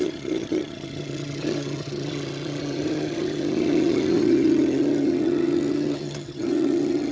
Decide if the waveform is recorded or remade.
remade